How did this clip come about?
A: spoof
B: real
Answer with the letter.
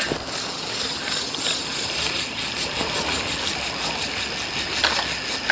B